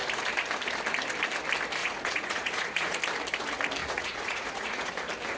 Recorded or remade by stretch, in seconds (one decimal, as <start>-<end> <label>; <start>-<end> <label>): 0.0-1.8 recorded; 1.8-3.0 remade; 3.0-3.8 recorded; 3.8-4.9 remade; 4.9-5.4 recorded